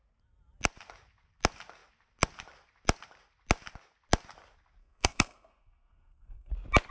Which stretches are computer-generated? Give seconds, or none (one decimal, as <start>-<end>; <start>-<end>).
4.8-6.5